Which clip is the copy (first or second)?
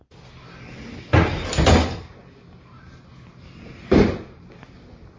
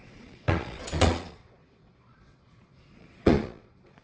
second